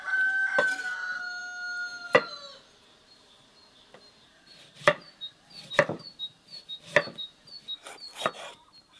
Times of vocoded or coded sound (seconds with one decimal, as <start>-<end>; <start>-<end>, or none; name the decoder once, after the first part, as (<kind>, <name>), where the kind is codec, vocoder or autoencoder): 4.3-6.8 (vocoder, BigVGAN v2)